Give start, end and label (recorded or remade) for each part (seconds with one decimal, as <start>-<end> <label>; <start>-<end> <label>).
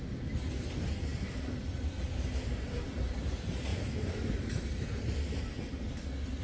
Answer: 0.0-6.4 recorded